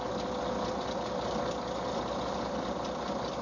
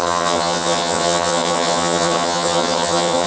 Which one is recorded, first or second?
first